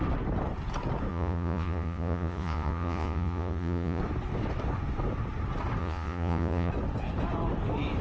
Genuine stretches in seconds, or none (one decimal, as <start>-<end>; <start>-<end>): 0.0-1.1; 4.0-5.8; 6.7-8.0

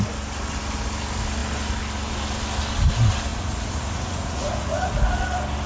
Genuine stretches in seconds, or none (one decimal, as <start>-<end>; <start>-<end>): 0.0-3.3; 5.1-5.7